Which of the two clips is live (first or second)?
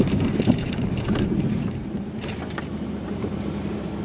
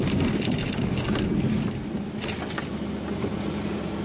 second